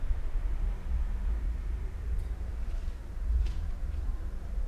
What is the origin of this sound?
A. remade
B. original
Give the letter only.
A